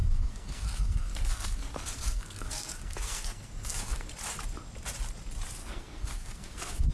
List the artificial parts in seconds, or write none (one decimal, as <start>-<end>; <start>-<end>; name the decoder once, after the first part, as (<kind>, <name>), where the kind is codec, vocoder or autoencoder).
0.0-4.1 (codec, SNAC); 5.6-6.9